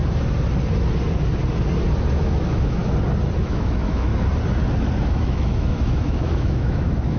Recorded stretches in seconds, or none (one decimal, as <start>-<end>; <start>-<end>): 0.0-2.1; 2.8-3.4; 4.1-5.1